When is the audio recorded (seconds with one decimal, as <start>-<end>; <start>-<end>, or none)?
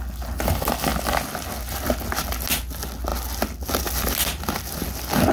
0.0-5.3